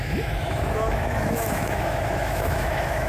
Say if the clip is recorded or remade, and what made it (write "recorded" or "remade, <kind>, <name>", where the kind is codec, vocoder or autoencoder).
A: remade, autoencoder, DAC-VAE